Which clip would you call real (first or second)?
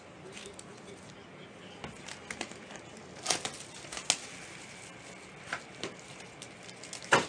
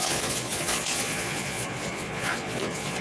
first